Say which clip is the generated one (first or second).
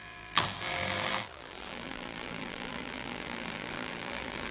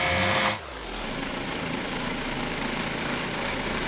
first